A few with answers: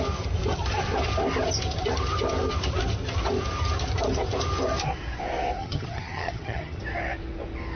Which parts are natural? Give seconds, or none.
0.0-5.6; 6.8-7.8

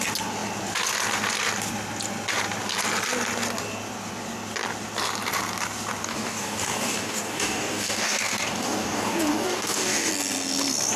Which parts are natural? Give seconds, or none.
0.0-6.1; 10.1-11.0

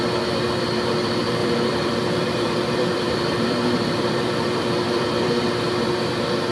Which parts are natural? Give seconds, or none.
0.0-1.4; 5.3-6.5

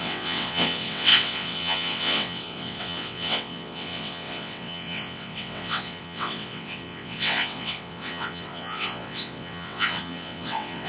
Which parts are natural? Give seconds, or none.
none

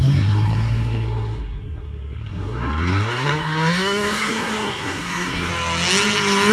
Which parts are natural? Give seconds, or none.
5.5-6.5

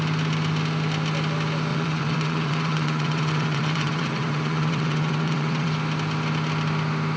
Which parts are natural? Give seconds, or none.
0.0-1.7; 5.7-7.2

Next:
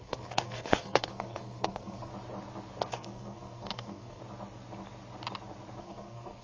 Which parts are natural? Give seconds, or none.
2.1-2.9; 4.2-5.8